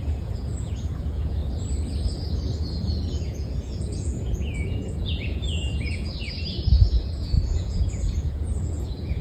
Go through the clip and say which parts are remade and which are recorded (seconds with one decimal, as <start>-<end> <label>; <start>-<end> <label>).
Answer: 0.0-1.4 remade; 1.4-3.2 recorded; 3.2-6.1 remade; 6.1-7.2 recorded; 7.2-9.2 remade